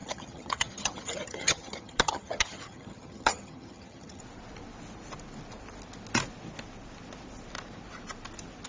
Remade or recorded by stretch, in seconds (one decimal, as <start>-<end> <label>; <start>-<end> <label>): 0.0-4.2 remade; 4.2-8.7 recorded